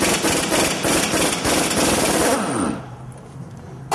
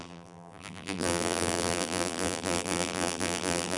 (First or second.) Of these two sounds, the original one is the first